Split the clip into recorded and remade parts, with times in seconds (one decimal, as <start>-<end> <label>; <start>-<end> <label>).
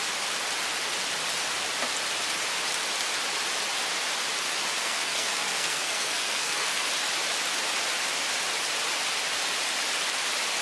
0.0-4.8 recorded; 4.8-6.9 remade; 6.9-10.6 recorded